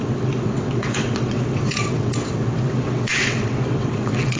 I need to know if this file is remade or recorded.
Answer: remade